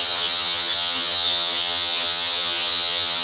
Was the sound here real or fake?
fake